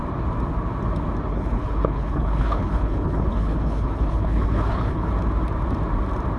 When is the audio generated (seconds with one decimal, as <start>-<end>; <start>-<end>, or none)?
1.3-5.1